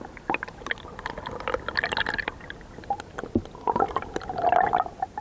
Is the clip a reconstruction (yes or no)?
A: no